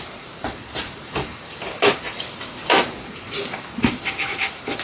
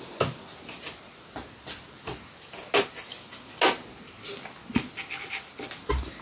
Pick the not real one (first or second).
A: first